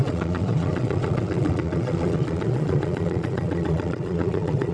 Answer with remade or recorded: remade